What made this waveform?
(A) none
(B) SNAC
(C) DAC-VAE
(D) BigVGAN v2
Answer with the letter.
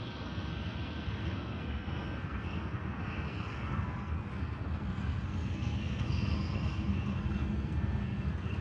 B